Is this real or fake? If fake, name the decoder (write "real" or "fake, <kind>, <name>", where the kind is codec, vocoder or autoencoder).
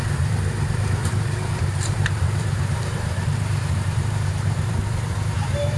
fake, vocoder, BigVGAN v2